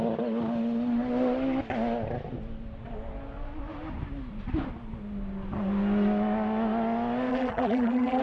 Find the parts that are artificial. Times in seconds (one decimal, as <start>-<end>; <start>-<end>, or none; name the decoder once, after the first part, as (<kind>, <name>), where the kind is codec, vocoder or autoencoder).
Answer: 7.3-8.2 (vocoder, BigVGAN v2)